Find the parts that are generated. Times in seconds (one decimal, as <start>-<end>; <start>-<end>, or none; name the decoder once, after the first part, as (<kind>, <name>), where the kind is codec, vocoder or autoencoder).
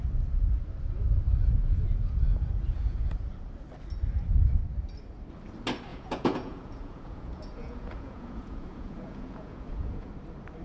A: 1.4-3.3 (vocoder, Vocos); 5.9-10.1